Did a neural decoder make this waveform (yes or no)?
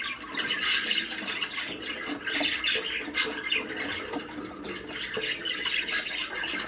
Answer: no